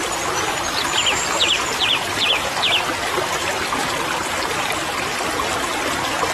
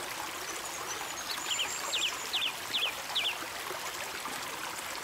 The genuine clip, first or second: second